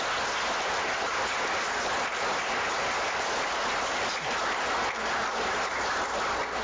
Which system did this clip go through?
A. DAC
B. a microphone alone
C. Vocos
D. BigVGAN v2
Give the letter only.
B